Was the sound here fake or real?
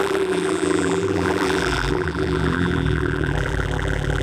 fake